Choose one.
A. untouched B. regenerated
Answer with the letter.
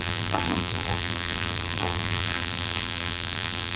B